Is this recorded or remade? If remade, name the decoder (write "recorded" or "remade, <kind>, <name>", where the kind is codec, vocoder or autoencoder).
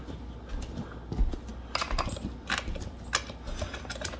recorded